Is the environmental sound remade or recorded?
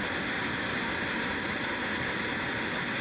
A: recorded